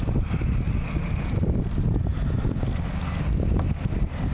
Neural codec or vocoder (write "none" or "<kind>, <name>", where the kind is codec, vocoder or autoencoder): none